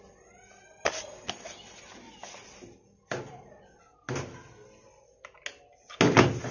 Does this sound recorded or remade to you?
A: recorded